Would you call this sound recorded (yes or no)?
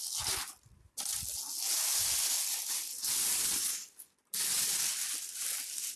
yes